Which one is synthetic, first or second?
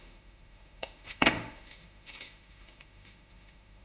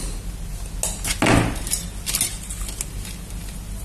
first